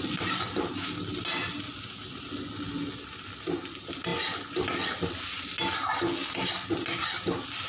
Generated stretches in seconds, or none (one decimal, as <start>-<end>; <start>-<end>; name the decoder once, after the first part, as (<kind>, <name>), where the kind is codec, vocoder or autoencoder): none